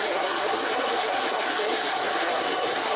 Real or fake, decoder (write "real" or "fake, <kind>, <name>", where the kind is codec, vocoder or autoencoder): fake, codec, SNAC